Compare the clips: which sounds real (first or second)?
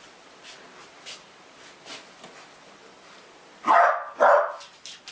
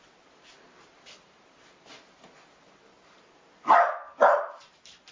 first